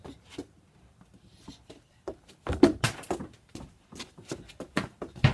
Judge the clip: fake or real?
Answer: real